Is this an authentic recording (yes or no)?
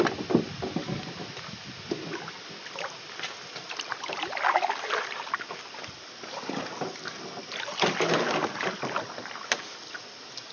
yes